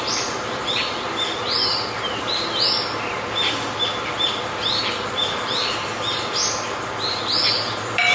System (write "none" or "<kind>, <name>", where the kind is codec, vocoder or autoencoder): none